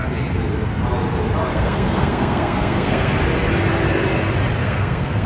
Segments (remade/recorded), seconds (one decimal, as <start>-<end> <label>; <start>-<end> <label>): 0.0-1.5 recorded; 1.5-3.1 remade; 3.1-4.6 recorded; 4.6-5.3 remade